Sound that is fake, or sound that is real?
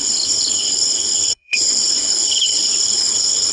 fake